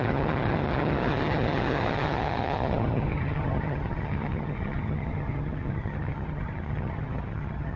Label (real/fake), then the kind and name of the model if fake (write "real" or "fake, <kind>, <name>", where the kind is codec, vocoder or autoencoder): fake, vocoder, HiFi-GAN